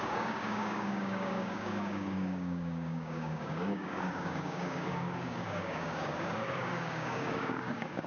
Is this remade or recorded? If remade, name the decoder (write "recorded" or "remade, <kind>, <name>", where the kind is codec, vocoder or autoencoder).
remade, codec, DAC